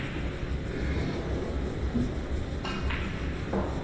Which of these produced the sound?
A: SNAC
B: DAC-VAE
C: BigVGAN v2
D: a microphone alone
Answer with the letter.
D